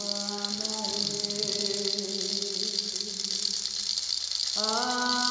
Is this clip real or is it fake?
real